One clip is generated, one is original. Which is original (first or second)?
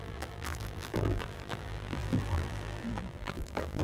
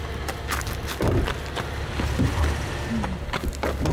second